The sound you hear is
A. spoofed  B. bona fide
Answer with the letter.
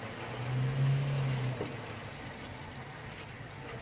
B